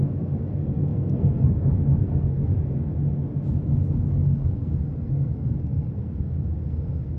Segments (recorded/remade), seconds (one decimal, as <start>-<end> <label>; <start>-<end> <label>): 0.0-2.9 remade; 2.9-4.1 recorded; 4.1-7.2 remade